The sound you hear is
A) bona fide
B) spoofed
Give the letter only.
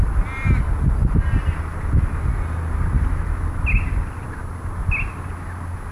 A